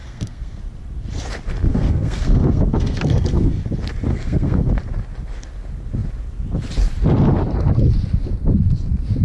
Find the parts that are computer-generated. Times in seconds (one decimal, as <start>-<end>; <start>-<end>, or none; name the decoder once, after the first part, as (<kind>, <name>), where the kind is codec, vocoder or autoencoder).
0.0-0.6 (codec, SNAC); 1.7-3.6; 4.1-4.7